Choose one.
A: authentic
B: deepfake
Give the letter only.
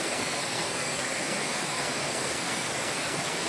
B